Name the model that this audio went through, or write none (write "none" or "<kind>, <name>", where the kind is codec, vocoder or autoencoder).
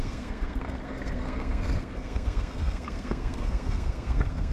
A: codec, SNAC